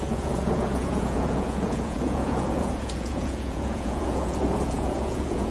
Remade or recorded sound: remade